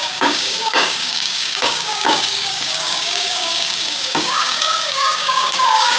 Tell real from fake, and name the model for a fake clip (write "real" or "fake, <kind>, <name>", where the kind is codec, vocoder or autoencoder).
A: fake, codec, DAC